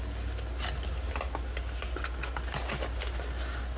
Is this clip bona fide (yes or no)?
yes